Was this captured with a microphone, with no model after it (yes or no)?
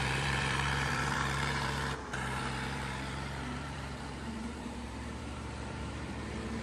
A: no